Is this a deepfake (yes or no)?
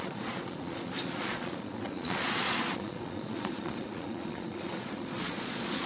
yes